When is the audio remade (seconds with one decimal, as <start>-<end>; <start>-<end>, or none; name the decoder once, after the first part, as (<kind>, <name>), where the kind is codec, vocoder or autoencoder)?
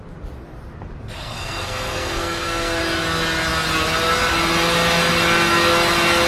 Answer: 1.2-2.8 (codec, SNAC)